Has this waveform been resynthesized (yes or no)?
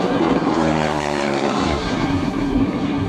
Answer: yes